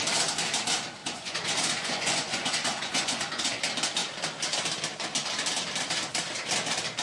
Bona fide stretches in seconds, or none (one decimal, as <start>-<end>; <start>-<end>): 0.0-1.0; 3.6-7.0